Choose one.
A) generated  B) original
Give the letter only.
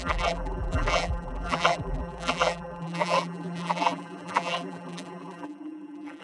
A